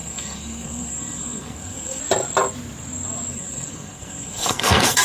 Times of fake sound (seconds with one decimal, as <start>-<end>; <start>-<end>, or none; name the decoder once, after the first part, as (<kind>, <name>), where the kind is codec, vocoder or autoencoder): 0.0-2.0 (codec, SNAC); 3.3-5.0